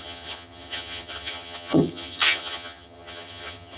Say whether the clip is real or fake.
fake